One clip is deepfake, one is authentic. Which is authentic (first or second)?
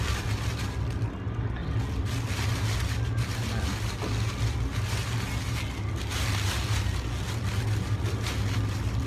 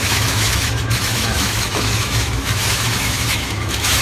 first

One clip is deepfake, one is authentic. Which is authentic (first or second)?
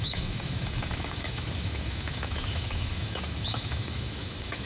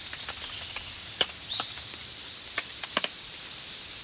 second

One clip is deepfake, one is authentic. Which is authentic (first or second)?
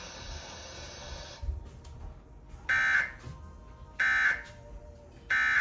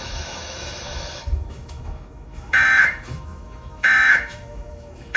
first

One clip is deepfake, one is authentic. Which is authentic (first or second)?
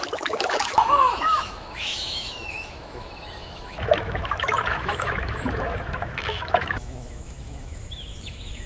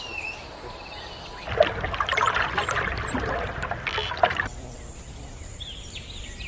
second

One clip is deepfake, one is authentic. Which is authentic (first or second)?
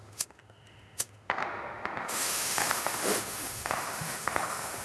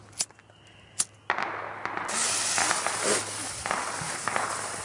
second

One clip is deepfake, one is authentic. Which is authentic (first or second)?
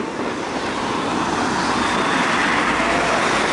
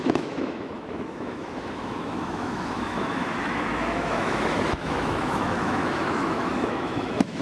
first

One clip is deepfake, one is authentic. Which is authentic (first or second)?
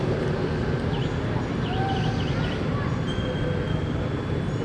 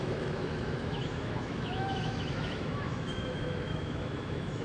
first